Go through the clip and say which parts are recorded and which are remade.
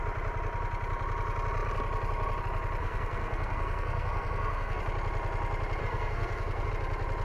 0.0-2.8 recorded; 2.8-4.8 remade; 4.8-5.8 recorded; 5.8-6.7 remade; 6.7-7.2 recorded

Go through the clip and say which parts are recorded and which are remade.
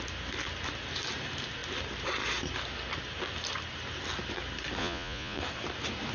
0.0-4.8 recorded; 4.8-5.4 remade; 5.4-6.1 recorded